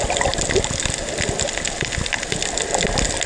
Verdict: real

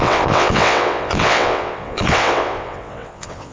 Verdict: fake